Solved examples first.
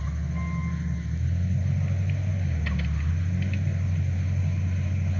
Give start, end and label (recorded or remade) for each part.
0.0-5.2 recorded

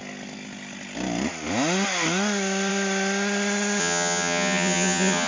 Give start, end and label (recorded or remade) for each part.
0.0-3.8 recorded; 3.8-5.3 remade

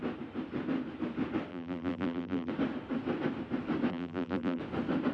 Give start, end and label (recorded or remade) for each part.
0.0-1.5 recorded; 1.5-2.5 remade; 2.5-3.9 recorded; 3.9-4.6 remade; 4.6-5.1 recorded

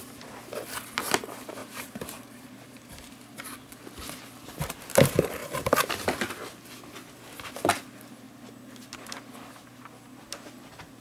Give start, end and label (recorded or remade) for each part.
0.0-1.6 recorded; 1.6-3.1 remade; 3.1-5.4 recorded; 5.4-5.9 remade; 5.9-11.0 recorded

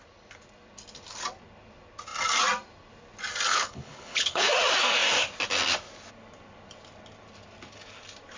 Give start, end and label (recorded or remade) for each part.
0.0-3.5 recorded; 3.5-4.5 remade; 4.5-8.4 recorded

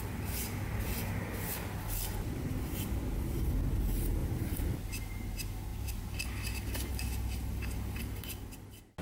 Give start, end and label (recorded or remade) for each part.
0.0-4.2 recorded; 4.2-4.9 remade; 4.9-9.0 recorded

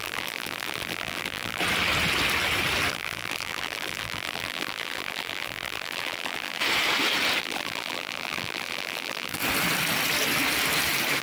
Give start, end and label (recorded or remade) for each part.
0.0-1.6 remade; 1.6-2.9 recorded; 2.9-6.6 remade; 6.6-7.4 recorded; 7.4-9.4 remade; 9.4-11.2 recorded